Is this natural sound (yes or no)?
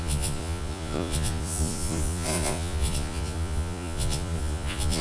no